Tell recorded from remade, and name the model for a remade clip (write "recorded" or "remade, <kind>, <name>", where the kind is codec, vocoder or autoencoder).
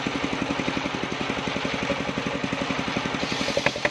recorded